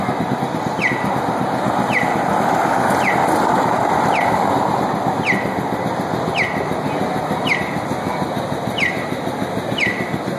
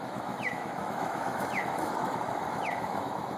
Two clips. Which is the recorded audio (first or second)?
first